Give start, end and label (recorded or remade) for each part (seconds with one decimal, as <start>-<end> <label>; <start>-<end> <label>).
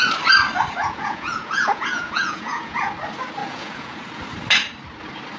0.0-0.8 recorded; 0.8-2.9 remade; 2.9-3.4 recorded; 3.4-4.2 remade; 4.2-5.4 recorded